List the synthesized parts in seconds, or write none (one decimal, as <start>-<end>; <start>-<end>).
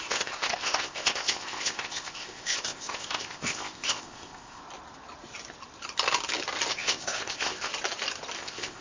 0.0-4.6; 6.7-7.7; 8.4-8.8